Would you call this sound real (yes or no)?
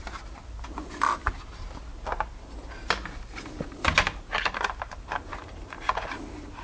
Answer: yes